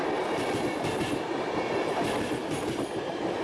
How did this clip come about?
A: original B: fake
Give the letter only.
A